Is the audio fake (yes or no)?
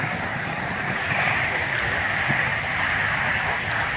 no